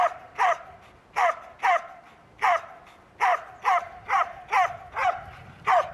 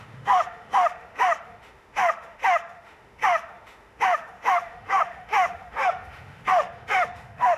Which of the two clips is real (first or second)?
first